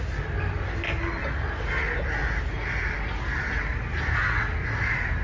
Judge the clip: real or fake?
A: real